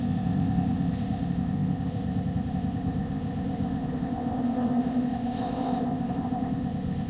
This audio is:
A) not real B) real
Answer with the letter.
A